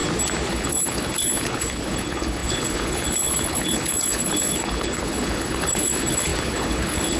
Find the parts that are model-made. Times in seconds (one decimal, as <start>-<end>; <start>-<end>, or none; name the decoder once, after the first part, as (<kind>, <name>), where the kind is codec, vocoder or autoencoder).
0.5-7.2 (codec, HILCodec)